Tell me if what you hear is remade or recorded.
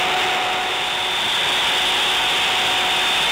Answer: recorded